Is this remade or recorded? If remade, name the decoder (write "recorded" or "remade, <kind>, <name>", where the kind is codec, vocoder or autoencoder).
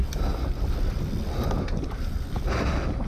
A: recorded